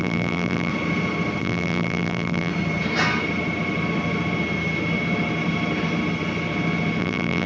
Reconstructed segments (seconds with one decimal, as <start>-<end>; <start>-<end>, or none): 0.0-0.7; 1.4-2.5; 7.0-7.5